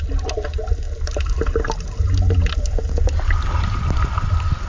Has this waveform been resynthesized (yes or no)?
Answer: no